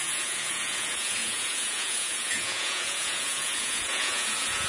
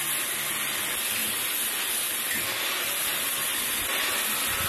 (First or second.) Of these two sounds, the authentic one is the second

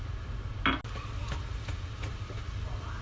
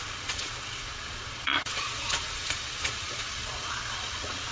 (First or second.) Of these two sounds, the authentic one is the first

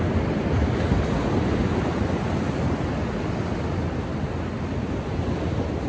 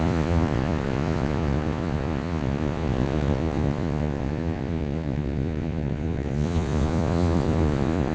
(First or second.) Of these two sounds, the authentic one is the first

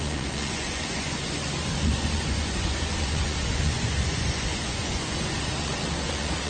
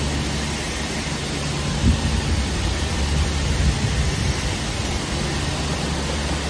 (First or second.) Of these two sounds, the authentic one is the second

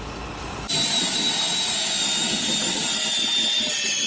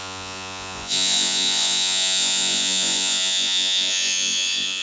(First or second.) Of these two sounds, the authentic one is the first